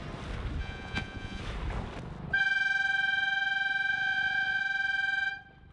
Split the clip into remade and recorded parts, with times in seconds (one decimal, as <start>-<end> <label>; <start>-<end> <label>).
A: 0.0-0.6 recorded; 0.6-1.4 remade; 1.4-3.9 recorded; 3.9-4.6 remade; 4.6-5.7 recorded